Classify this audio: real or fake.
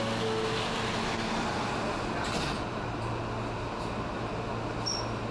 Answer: real